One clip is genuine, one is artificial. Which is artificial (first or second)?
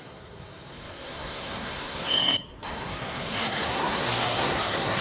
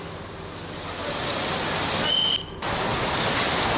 first